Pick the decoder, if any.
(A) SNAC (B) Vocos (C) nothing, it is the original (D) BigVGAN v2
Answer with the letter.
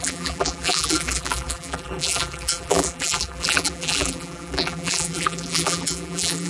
D